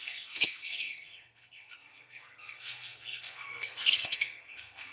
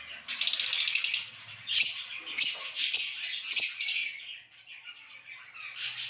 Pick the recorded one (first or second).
second